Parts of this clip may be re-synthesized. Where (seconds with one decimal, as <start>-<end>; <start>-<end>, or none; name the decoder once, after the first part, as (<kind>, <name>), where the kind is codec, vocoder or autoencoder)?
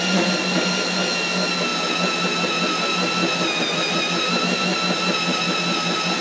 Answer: none